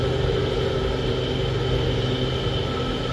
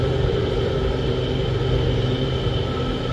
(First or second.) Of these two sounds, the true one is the first